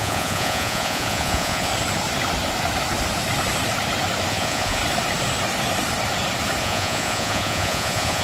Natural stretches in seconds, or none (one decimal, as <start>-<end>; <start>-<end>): 1.7-4.3; 4.8-6.6

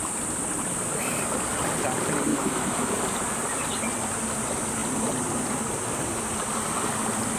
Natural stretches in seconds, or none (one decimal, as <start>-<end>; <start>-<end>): 0.0-2.3; 2.9-7.4

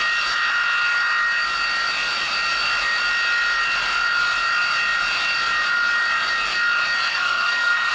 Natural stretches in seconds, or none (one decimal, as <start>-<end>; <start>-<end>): 0.0-7.1